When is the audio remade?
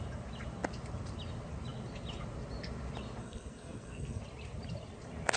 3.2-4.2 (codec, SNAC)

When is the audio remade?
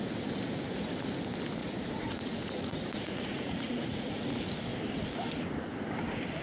1.6-4.3 (vocoder, Vocos)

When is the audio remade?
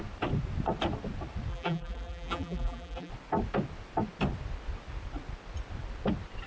1.5-3.1 (vocoder, BigVGAN v2)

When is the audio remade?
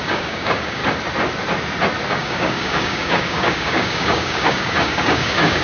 0.0-0.8 (codec, DAC); 2.1-5.6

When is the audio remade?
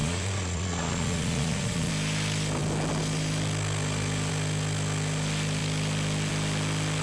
0.0-1.9 (vocoder, Vocos)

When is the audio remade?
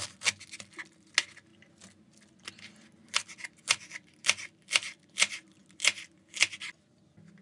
none